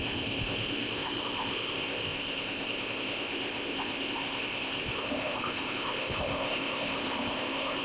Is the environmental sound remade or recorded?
remade